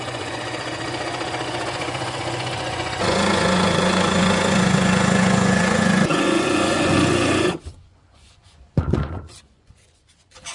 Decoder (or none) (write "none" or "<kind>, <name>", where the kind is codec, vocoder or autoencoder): vocoder, Vocos